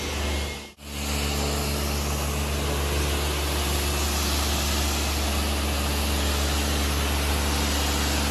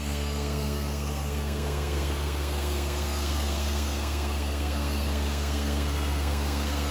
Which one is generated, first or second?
second